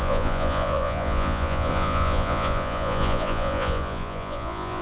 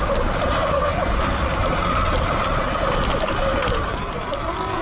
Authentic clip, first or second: second